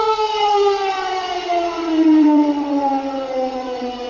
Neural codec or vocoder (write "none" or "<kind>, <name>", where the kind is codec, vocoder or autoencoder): vocoder, WaveNeXt